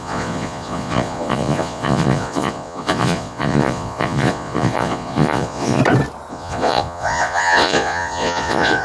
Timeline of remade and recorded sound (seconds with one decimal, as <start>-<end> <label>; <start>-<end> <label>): 0.0-5.8 remade; 5.8-6.3 recorded; 6.3-8.8 remade